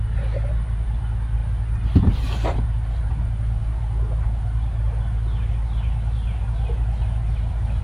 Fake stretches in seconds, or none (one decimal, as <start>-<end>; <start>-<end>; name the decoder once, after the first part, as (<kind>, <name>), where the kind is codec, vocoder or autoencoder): none